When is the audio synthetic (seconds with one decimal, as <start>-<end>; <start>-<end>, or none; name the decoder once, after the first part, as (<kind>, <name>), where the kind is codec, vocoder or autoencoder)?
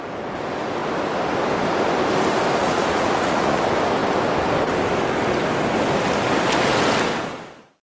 2.6-3.6 (vocoder, Vocos)